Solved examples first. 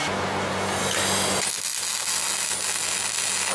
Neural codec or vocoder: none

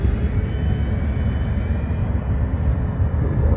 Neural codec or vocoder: none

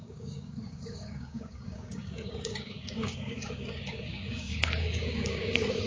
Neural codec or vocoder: codec, DAC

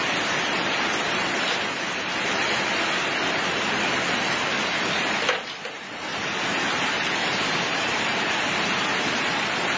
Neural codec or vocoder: none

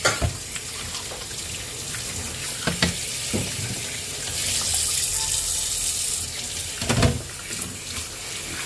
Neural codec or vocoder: none